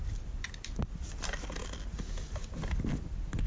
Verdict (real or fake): real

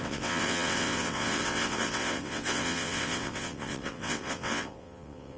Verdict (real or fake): fake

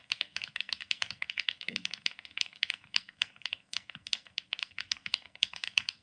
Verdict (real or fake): fake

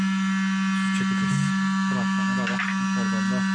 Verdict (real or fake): real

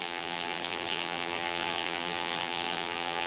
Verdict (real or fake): fake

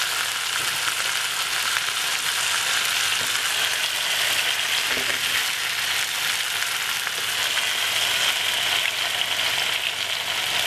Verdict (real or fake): real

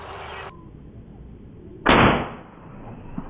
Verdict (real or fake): real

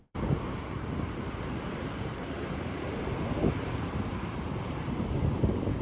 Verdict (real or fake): fake